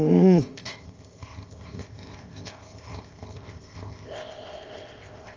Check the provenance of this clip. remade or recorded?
remade